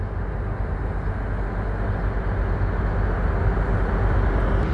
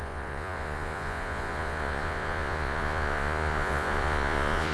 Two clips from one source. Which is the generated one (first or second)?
second